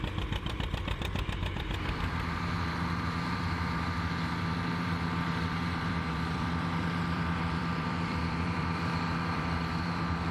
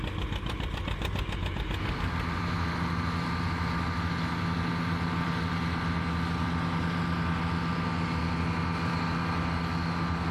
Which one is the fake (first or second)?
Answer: first